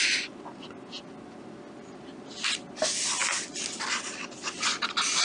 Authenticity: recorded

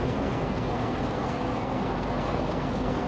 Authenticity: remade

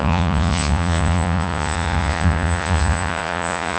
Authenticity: remade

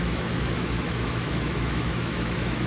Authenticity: remade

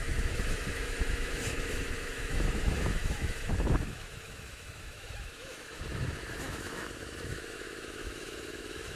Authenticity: remade